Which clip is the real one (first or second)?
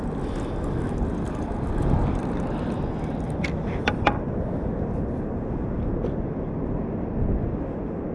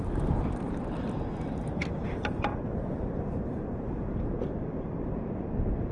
first